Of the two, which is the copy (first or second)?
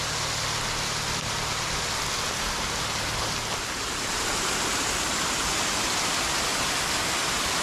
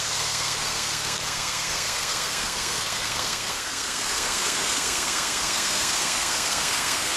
second